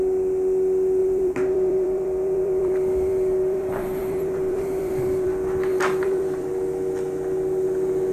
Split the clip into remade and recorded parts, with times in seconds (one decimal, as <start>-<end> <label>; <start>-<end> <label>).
0.0-1.0 recorded; 1.0-5.3 remade; 5.3-5.7 recorded; 5.7-6.5 remade; 6.5-8.1 recorded